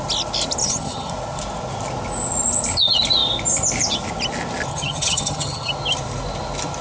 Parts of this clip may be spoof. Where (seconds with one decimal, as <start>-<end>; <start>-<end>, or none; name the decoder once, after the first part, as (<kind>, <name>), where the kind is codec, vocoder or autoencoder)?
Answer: 0.6-1.1 (vocoder, HiFi-GAN); 4.7-5.7